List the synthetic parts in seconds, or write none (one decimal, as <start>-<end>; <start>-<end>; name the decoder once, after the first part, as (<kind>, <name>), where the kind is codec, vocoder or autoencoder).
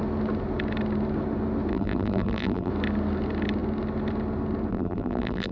1.7-2.7 (vocoder, BigVGAN v2); 4.7-5.5